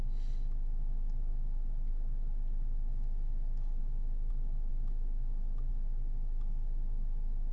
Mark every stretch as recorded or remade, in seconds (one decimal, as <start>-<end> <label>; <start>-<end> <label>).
0.0-1.3 recorded; 1.3-1.9 remade; 1.9-3.8 recorded; 3.8-4.3 remade; 4.3-4.7 recorded; 4.7-5.7 remade; 5.7-7.5 recorded